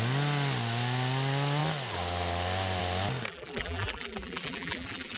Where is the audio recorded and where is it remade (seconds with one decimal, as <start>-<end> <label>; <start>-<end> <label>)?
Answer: 0.0-3.3 recorded; 3.3-5.2 remade